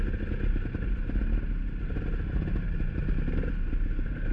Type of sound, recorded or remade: recorded